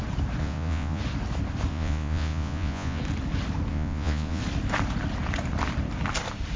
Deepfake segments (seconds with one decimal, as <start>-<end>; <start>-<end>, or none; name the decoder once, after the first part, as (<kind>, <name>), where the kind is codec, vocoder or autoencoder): 0.4-1.0 (vocoder, Vocos); 1.7-3.0; 3.7-4.4